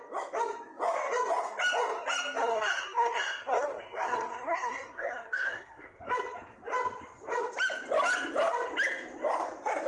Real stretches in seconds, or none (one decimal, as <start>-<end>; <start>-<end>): 0.0-2.4; 6.0-9.9